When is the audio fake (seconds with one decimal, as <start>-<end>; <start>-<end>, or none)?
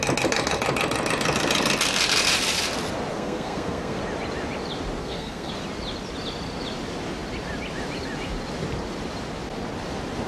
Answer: 3.1-4.0; 5.0-5.5